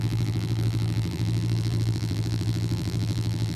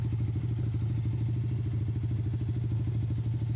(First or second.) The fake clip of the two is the first